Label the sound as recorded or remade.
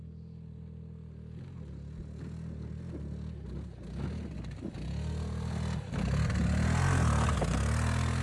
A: recorded